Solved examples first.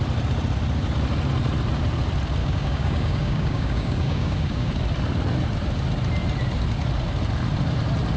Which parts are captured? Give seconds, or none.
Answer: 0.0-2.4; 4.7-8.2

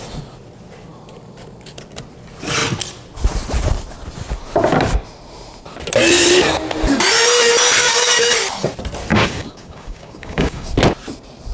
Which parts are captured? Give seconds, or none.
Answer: 0.0-7.8; 8.3-9.1; 10.7-11.5

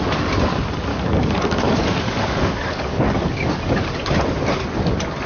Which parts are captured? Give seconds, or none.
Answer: 0.0-0.9; 4.1-5.3

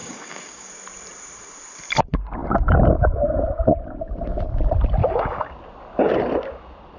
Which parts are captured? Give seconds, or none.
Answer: 0.7-5.0; 5.5-7.0

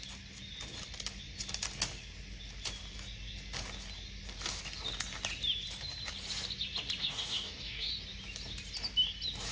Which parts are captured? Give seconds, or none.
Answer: 0.0-7.0; 7.9-9.5

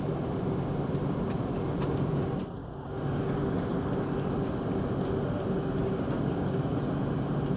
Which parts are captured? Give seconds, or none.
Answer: 0.0-2.6; 3.7-5.8; 6.6-7.6

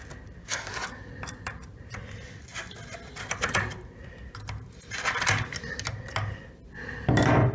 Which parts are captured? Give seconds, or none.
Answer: 0.0-0.4; 1.1-7.5

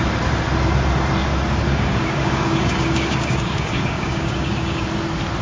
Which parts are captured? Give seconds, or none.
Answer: 0.0-1.7; 4.9-5.4